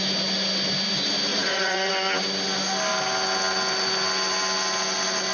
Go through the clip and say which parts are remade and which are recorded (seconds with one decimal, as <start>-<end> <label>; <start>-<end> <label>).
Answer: 0.0-1.3 recorded; 1.3-1.9 remade; 1.9-5.3 recorded